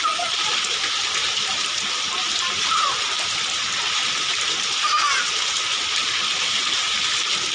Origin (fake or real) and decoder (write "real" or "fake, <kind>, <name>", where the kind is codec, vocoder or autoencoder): fake, vocoder, BigVGAN v2